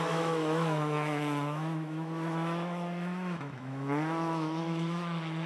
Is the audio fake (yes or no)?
yes